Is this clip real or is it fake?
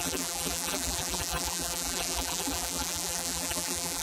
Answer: fake